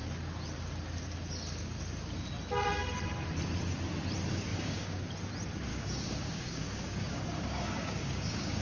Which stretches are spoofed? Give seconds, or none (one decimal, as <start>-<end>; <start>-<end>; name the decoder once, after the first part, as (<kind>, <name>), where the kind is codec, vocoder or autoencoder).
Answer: 4.5-5.0 (codec, DAC); 5.7-8.6